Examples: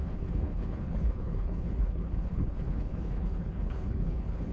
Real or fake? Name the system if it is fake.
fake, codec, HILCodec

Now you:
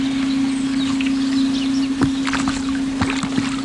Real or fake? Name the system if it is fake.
real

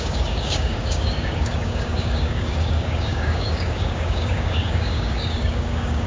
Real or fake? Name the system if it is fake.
fake, codec, DAC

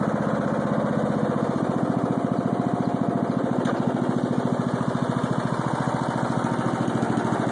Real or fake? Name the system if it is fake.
real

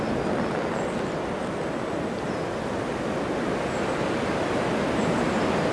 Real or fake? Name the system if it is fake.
real